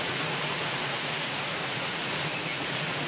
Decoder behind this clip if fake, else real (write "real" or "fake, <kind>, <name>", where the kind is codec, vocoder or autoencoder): fake, vocoder, Vocos